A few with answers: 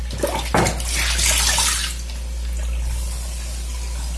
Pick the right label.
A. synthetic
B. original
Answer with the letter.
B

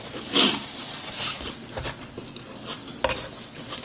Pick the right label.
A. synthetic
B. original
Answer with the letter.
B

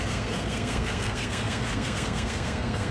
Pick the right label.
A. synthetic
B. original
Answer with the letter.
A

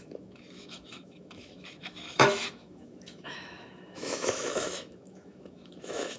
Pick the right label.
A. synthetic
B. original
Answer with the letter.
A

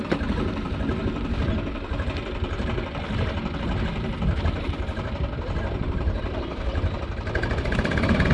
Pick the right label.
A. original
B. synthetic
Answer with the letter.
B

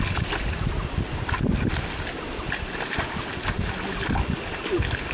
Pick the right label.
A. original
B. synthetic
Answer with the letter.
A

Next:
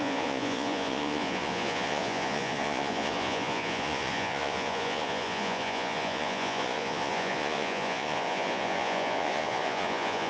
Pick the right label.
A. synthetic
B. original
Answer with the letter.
A